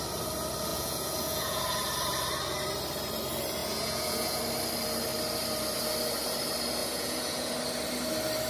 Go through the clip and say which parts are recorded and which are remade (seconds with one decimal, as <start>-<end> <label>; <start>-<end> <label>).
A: 0.0-0.7 recorded; 0.7-1.6 remade; 1.6-3.6 recorded; 3.6-4.4 remade; 4.4-6.8 recorded; 6.8-7.5 remade; 7.5-8.5 recorded